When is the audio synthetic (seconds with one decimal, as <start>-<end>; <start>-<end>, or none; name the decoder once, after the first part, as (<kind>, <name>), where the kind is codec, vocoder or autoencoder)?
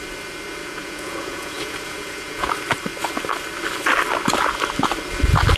0.6-2.5 (vocoder, Vocos)